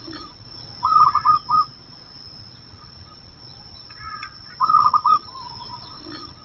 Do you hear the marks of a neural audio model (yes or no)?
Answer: yes